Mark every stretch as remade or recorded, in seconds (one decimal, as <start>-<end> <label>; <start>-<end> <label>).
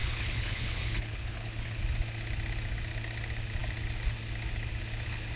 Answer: 0.0-1.8 remade; 1.8-5.4 recorded